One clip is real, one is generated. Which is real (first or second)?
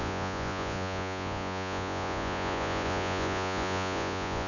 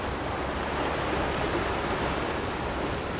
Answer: second